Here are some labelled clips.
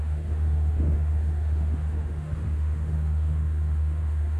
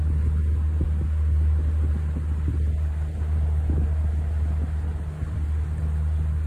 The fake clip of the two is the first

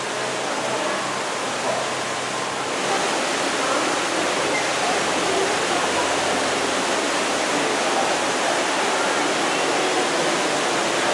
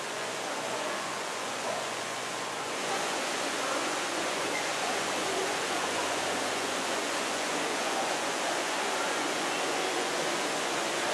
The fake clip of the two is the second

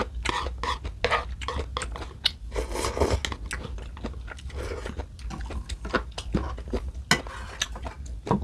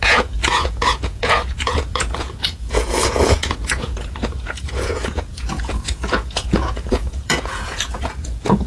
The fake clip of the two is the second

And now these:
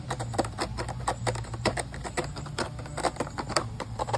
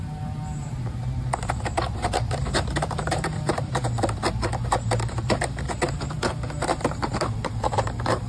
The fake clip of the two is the second